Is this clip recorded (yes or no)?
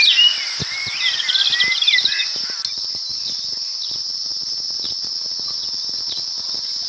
yes